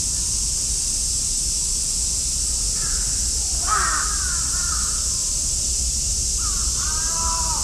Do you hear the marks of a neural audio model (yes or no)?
no